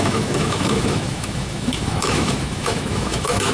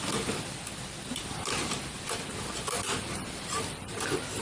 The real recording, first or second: second